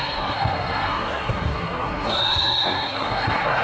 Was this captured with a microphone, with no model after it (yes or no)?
no